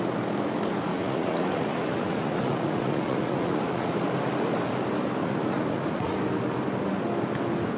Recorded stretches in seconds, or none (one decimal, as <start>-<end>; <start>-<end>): 0.0-0.9; 3.9-5.2; 6.2-7.8